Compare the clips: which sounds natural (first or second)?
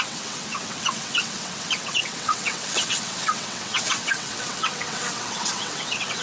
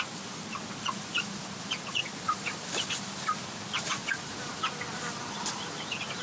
second